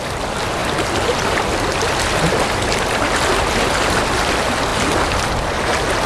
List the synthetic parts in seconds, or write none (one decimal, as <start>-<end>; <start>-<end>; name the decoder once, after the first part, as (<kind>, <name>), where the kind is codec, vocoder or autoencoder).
none